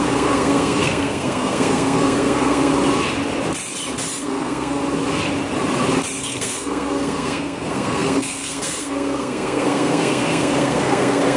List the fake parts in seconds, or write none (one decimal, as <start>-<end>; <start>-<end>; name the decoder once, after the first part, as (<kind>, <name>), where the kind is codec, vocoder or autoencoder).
0.0-2.7 (codec, SNAC); 4.2-4.8; 6.2-11.4